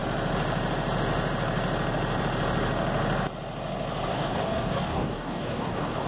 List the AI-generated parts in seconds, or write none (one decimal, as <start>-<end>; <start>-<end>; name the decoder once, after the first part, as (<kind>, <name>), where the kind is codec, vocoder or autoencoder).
4.1-6.1 (codec, DAC)